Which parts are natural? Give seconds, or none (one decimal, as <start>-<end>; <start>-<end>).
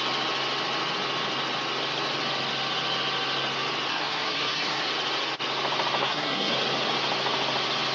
0.0-3.9; 4.9-6.0; 6.5-7.9